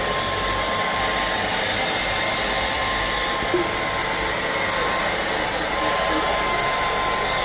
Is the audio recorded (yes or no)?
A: yes